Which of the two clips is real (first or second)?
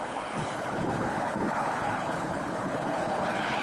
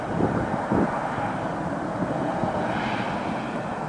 second